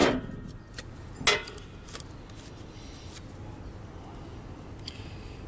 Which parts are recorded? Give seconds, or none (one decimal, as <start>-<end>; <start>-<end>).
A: 0.0-5.5